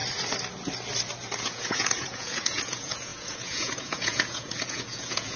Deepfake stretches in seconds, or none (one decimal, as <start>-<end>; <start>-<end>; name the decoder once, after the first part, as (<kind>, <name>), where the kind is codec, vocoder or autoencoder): 1.4-5.4 (vocoder, Vocos)